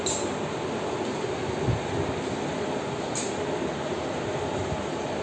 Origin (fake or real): real